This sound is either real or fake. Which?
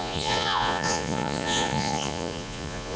fake